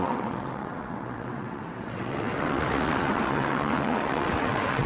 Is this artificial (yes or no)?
yes